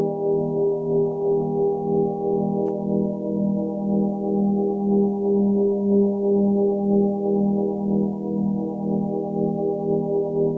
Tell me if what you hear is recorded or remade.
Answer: recorded